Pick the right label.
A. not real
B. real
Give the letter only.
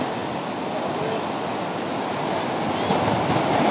B